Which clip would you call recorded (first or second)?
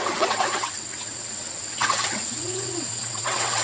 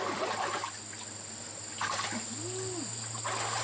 second